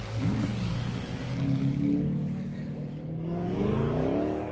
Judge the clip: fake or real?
fake